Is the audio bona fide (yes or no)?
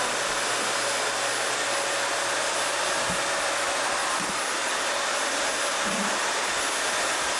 yes